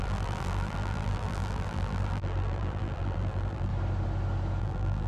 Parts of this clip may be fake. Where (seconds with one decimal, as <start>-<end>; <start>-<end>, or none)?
0.0-3.7; 4.6-5.1

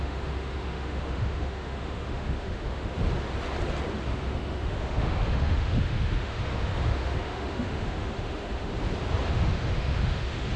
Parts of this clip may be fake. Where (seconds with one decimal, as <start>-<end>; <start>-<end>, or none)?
0.0-3.0; 4.1-8.7; 9.3-10.6

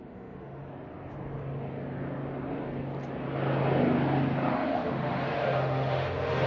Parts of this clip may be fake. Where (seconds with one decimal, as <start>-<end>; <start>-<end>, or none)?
0.0-0.6; 4.5-6.5

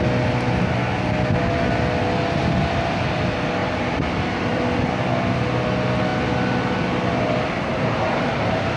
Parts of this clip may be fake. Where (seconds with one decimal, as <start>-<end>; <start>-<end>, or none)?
3.6-4.6; 7.7-8.8

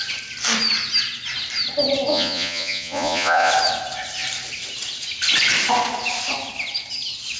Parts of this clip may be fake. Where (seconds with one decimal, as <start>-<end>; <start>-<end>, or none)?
2.1-3.5